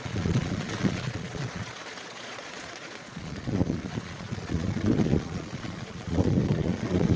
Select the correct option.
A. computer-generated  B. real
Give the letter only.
A